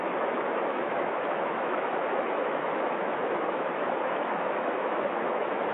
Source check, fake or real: fake